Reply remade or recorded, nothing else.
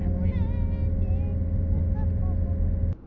recorded